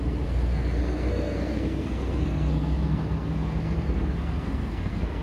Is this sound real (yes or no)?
no